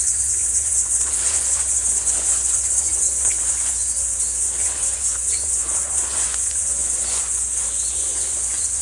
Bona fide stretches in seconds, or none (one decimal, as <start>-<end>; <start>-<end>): none